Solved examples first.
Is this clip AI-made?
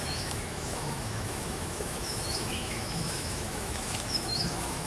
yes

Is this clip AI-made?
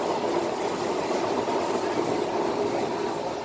no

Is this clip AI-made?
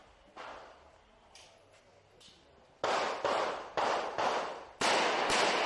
no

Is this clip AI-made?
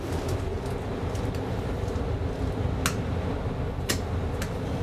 no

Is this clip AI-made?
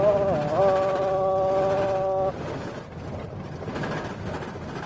no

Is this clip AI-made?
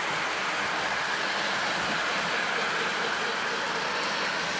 no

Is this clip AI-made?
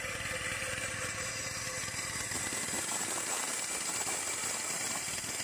no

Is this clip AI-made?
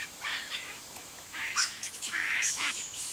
yes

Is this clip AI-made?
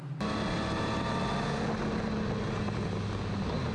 no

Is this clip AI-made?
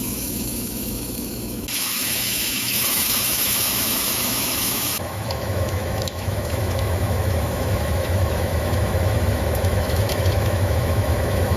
yes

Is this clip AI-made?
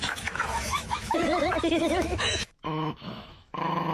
yes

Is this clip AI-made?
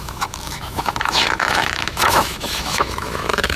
yes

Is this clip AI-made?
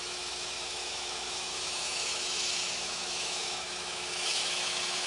yes